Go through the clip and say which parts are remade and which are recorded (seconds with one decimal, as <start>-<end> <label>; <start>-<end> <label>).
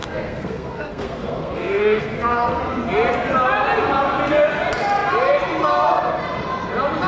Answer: 0.0-2.6 remade; 2.6-7.1 recorded